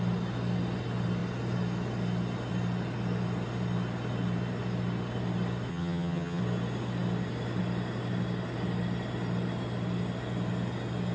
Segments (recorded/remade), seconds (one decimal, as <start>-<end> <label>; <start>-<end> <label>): 0.0-5.7 recorded; 5.7-6.4 remade; 6.4-11.1 recorded